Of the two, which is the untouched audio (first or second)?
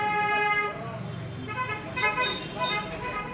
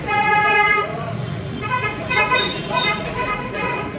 first